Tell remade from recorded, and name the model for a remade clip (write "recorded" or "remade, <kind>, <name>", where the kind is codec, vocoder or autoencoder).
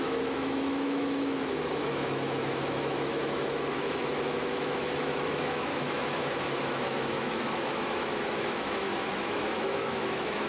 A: remade, autoencoder, DAC-VAE